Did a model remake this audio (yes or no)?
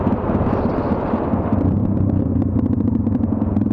yes